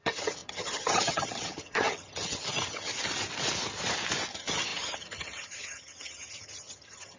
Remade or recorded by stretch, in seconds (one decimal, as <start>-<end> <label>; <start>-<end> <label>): 0.0-2.9 remade; 2.9-4.3 recorded; 4.3-7.2 remade